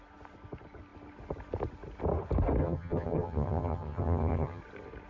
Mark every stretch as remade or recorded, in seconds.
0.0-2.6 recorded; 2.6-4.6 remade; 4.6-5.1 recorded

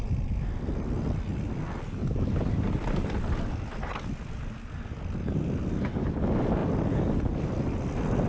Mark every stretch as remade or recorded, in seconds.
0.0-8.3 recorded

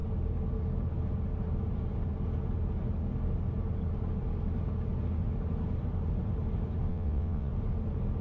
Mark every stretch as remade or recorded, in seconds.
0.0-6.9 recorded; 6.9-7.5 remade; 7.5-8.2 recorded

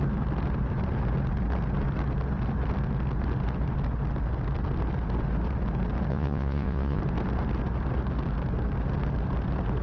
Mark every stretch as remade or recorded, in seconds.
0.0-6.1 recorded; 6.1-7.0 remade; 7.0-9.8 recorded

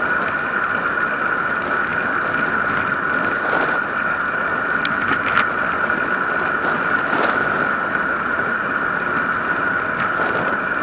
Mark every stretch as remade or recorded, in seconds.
0.0-8.1 recorded; 8.1-8.7 remade; 8.7-10.8 recorded

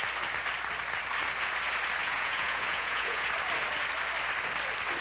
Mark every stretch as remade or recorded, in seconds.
0.0-2.0 recorded; 2.0-3.3 remade; 3.3-5.0 recorded